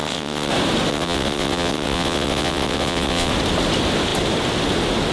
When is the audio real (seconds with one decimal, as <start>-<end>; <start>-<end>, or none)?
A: 0.5-0.9; 3.3-5.1